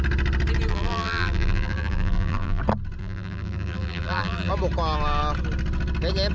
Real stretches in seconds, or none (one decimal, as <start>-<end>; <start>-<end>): 0.0-0.7; 2.6-3.0; 4.5-6.3